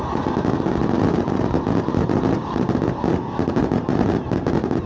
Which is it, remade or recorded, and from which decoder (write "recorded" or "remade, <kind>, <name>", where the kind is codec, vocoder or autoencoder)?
recorded